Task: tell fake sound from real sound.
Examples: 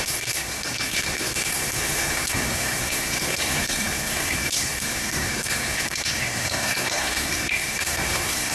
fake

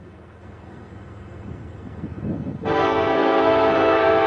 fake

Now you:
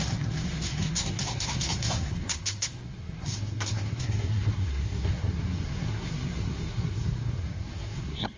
fake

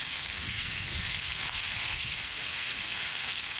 fake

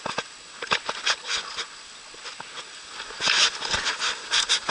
real